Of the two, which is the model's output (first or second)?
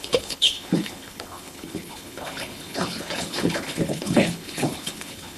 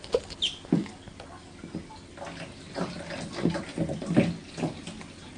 first